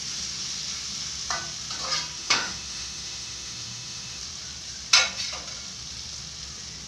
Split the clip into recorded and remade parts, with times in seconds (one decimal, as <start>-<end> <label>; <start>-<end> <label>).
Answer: 0.0-2.2 recorded; 2.2-4.2 remade; 4.2-6.9 recorded

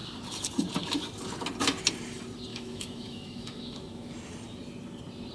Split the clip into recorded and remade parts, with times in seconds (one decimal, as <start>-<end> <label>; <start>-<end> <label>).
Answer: 0.0-2.5 recorded; 2.5-4.1 remade; 4.1-5.3 recorded

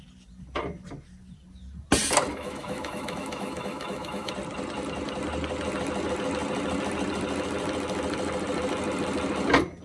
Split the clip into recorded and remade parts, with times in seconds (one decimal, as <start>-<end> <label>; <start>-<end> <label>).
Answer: 0.0-2.3 recorded; 2.3-4.3 remade; 4.3-9.8 recorded

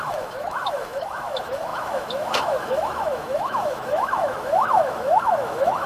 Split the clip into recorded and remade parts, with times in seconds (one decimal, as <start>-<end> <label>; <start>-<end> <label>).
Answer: 0.0-5.9 remade

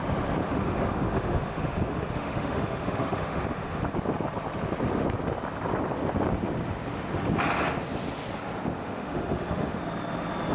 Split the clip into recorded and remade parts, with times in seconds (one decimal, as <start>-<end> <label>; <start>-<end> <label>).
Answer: 0.0-0.4 recorded; 0.4-3.9 remade; 3.9-8.8 recorded; 8.8-9.8 remade; 9.8-10.5 recorded

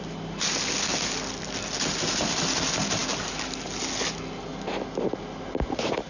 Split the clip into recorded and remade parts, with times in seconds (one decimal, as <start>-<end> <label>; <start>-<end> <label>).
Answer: 0.0-6.1 recorded

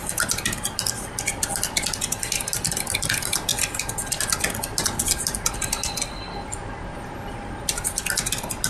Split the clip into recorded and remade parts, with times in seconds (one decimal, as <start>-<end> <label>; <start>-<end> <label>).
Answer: 0.0-8.7 recorded

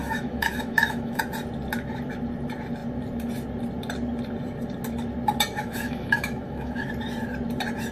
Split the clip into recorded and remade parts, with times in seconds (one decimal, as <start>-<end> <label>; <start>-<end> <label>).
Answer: 0.0-1.2 remade; 1.2-5.5 recorded; 5.5-6.9 remade; 6.9-7.9 recorded